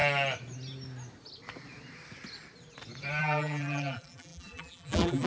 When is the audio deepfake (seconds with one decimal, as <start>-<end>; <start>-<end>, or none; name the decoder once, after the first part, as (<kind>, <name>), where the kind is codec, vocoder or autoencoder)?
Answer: 3.2-5.3 (vocoder, BigVGAN v2)